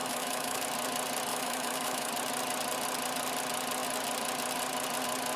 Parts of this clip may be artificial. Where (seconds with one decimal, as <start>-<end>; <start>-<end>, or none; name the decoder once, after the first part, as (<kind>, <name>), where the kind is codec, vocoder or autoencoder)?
0.0-0.6 (autoencoder, DAC-VAE); 1.3-2.1